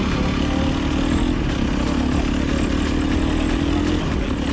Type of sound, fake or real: real